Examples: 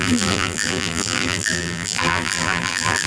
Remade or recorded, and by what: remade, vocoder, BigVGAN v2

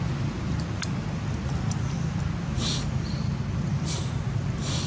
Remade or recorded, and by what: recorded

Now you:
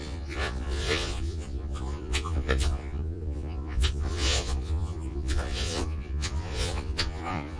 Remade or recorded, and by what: remade, vocoder, Vocos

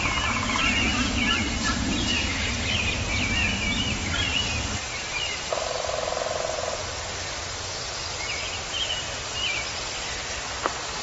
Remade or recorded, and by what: recorded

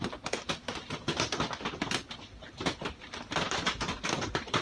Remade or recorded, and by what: remade, vocoder, BigVGAN v2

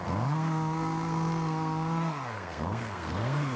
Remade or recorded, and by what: remade, codec, SNAC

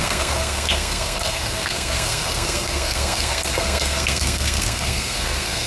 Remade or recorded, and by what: remade, codec, SNAC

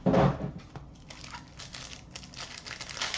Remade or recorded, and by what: recorded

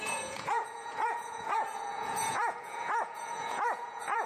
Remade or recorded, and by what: remade, vocoder, Vocos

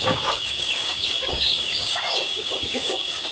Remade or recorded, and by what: remade, codec, DAC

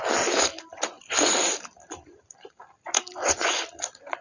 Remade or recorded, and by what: recorded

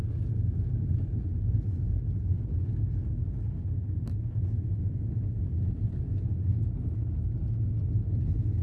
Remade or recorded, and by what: recorded